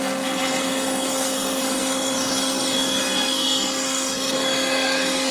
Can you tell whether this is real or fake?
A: fake